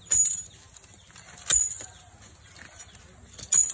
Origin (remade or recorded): recorded